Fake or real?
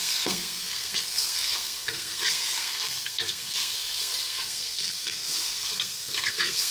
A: fake